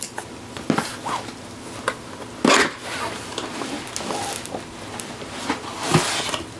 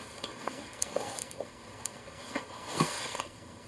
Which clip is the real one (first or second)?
first